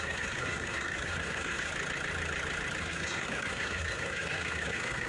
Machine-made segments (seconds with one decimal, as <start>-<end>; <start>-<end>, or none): 0.0-1.7; 2.8-5.1

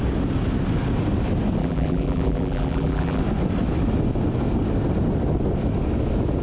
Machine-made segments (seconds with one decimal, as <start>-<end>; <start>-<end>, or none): 1.6-3.2

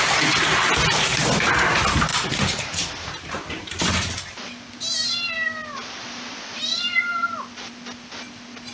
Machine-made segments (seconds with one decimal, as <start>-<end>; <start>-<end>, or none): 2.1-3.8; 5.6-7.7

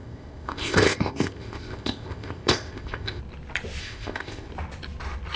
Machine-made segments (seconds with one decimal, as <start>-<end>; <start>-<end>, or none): 0.0-3.2; 3.8-4.5

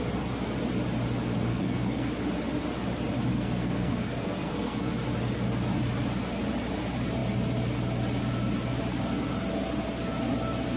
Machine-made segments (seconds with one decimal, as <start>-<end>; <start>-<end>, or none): 1.5-2.1; 3.3-4.9

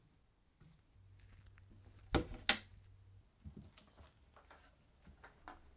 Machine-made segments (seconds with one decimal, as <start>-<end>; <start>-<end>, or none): none